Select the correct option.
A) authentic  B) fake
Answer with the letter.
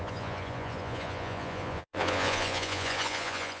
B